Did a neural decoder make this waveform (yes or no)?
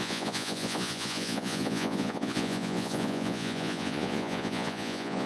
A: yes